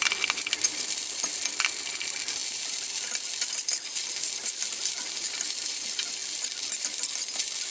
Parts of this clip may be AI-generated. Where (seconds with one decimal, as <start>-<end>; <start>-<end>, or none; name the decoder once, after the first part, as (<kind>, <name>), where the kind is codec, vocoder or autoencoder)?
none